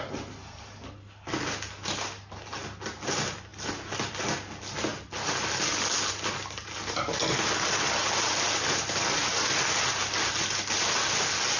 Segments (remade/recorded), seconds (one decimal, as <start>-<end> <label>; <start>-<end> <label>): 0.0-11.6 recorded

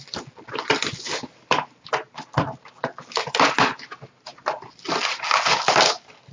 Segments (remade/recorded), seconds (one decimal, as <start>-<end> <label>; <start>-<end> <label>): 0.0-6.3 recorded

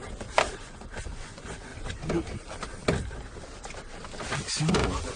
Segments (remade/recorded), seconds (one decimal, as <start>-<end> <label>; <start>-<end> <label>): 0.0-0.5 recorded; 0.5-1.7 remade; 1.7-4.7 recorded; 4.7-5.2 remade

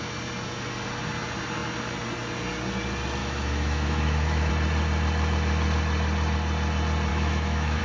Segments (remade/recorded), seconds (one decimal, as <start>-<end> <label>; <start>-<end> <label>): 0.0-3.2 recorded; 3.2-4.5 remade; 4.5-7.1 recorded; 7.1-7.8 remade

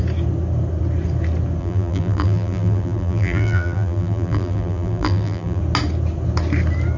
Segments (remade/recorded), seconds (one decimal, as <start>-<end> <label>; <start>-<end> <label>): 0.0-1.6 recorded; 1.6-5.6 remade; 5.6-7.0 recorded

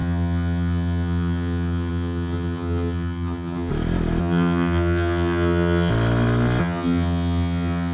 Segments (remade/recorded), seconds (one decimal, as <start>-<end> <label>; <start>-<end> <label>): 0.0-3.7 remade; 3.7-4.2 recorded; 4.2-5.9 remade; 5.9-6.6 recorded; 6.6-7.9 remade

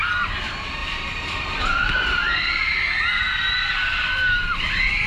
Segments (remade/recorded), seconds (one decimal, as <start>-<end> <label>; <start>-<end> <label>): 0.0-0.8 recorded; 0.8-1.6 remade; 1.6-5.1 recorded